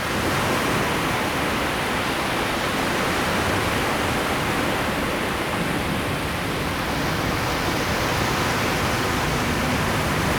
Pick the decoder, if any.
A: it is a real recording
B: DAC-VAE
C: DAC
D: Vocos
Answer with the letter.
A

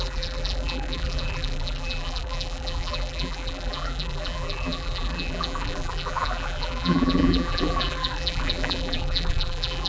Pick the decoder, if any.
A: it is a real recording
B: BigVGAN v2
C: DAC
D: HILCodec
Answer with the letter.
B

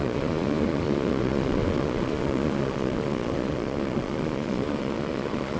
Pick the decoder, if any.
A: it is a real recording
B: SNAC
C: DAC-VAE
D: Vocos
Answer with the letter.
D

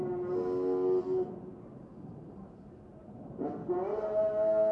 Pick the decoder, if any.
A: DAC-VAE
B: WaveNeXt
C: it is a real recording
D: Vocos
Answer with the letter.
C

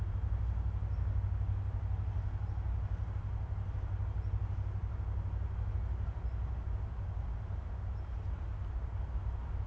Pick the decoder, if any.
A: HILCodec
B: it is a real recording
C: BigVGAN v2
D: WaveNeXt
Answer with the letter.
B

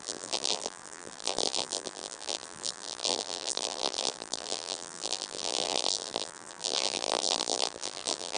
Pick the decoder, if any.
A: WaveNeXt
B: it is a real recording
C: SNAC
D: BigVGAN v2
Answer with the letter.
D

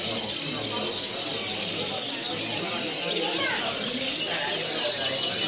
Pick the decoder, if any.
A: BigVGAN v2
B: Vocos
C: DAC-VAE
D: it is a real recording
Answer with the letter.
D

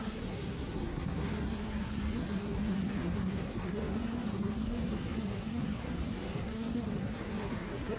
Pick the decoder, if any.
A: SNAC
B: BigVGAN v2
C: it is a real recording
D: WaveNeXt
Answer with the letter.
A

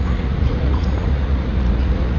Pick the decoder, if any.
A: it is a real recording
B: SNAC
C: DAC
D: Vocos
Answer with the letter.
D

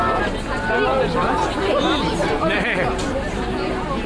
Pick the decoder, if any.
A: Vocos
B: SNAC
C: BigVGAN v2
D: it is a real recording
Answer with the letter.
D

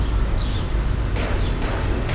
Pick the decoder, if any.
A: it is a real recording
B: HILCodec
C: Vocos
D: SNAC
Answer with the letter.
A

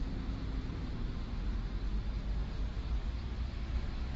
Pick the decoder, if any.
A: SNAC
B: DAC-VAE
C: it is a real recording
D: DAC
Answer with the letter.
C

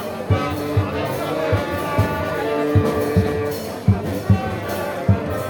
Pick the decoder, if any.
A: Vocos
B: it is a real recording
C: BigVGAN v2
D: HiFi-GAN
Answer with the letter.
C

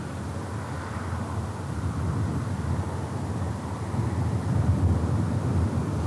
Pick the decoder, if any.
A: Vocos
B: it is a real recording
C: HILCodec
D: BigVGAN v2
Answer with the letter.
B